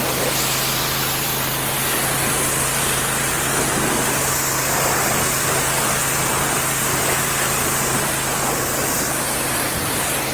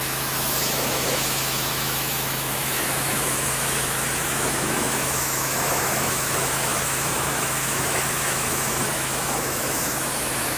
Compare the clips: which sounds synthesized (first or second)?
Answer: second